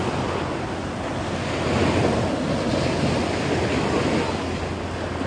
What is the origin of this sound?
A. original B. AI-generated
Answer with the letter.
A